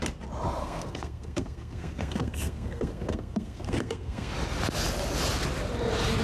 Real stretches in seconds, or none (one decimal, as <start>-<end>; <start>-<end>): 0.0-0.6; 4.3-6.2